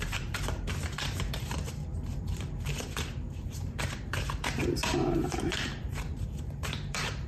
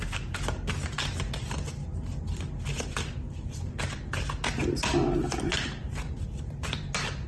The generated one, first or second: first